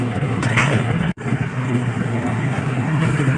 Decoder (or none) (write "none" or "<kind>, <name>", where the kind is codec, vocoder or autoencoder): codec, SNAC